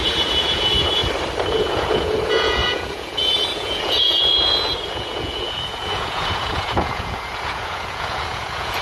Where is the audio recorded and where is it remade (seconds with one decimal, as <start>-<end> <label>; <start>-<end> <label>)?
0.0-1.0 remade; 1.0-1.5 recorded; 1.5-8.8 remade